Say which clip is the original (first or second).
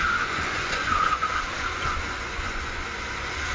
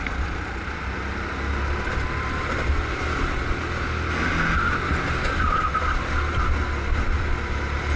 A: second